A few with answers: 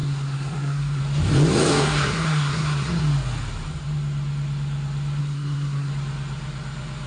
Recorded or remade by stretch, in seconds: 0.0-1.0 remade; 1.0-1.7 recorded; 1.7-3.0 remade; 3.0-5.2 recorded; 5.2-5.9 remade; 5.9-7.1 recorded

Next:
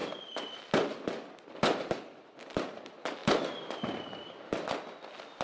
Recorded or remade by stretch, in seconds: 0.0-5.4 recorded

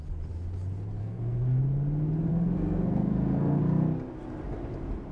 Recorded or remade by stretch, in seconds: 0.0-1.0 recorded; 1.0-1.6 remade; 1.6-2.3 recorded; 2.3-3.6 remade; 3.6-5.1 recorded